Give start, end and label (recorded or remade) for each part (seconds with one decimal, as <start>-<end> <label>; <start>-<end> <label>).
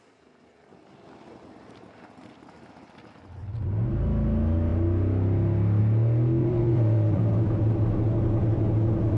0.0-6.4 recorded; 6.4-7.2 remade; 7.2-9.2 recorded